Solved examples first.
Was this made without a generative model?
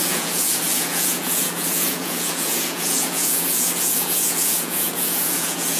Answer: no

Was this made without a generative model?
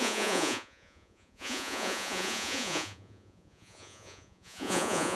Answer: no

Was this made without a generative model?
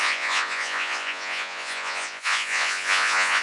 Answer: no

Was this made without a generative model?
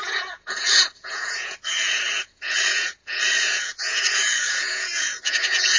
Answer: no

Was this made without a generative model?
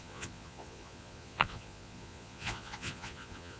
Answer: no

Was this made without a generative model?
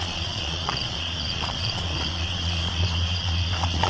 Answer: no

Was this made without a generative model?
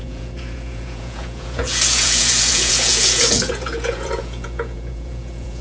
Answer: no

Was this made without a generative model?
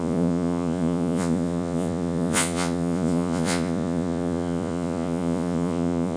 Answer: no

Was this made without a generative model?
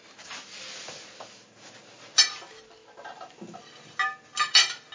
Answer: yes